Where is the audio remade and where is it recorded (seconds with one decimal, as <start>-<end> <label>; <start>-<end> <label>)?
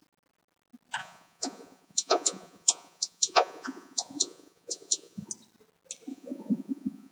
0.0-1.0 recorded; 1.0-5.3 remade; 5.3-6.1 recorded; 6.1-7.1 remade